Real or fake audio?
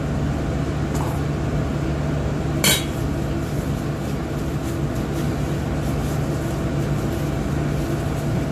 real